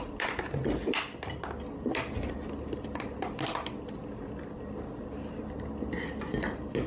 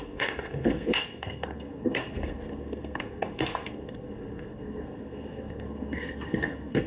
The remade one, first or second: second